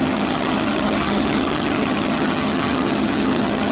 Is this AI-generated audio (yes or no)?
yes